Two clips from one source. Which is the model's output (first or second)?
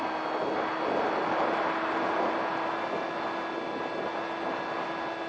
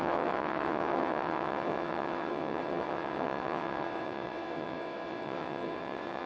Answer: second